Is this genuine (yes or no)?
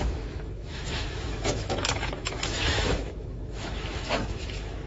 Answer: no